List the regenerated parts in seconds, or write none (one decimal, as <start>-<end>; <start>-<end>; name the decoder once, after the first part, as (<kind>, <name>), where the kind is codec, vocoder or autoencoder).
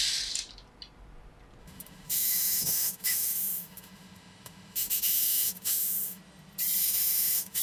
1.6-6.2 (autoencoder, DAC-VAE); 6.8-7.6